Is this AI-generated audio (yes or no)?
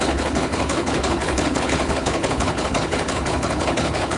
yes